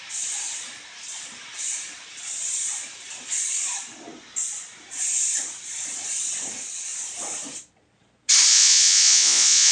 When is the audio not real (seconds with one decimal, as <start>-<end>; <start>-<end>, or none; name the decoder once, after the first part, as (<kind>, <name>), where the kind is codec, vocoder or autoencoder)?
8.5-9.7 (vocoder, Vocos)